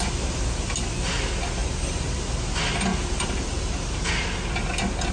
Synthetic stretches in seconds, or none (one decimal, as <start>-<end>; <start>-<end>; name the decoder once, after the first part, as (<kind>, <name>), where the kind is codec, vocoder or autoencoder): 1.6-2.2 (vocoder, BigVGAN v2); 2.9-4.1